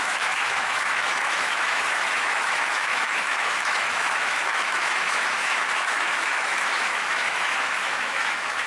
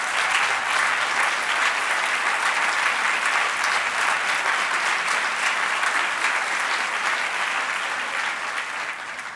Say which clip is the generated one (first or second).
first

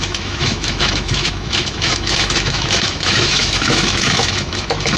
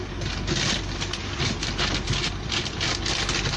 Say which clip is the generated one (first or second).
first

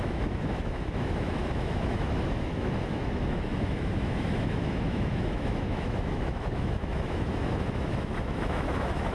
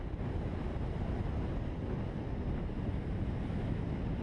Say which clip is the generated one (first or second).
first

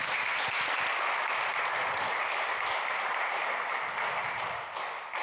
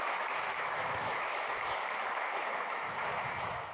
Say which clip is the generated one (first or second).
second